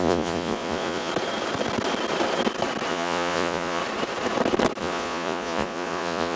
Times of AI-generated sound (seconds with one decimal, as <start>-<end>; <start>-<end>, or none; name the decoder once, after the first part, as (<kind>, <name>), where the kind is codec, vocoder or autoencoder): 0.0-1.1 (vocoder, Vocos); 2.9-3.8; 4.8-6.4